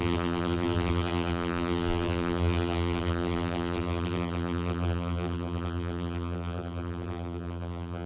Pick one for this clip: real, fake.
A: fake